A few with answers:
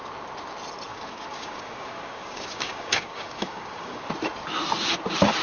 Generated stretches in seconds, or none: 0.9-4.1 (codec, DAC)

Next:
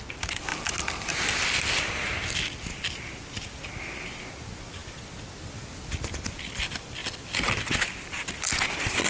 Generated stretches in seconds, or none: none

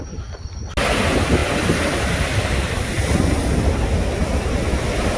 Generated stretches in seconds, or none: none